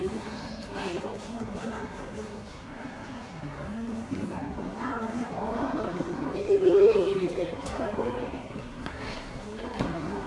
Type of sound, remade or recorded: remade